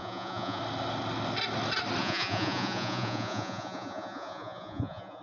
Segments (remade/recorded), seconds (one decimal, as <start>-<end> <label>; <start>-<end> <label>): 0.0-0.6 remade; 0.6-2.0 recorded; 2.0-5.2 remade